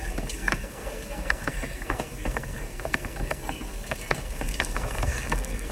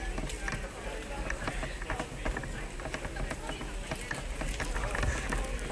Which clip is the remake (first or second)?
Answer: first